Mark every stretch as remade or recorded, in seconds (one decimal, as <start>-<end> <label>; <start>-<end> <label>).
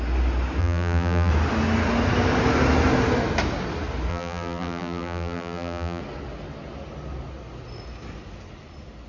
0.0-0.6 recorded; 0.6-1.3 remade; 1.3-4.1 recorded; 4.1-6.0 remade; 6.0-9.1 recorded